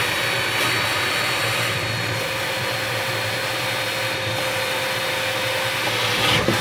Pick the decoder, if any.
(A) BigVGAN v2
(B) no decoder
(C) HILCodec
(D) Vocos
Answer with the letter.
B